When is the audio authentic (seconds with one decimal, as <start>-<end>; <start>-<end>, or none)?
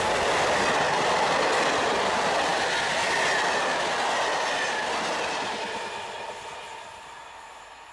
0.0-7.9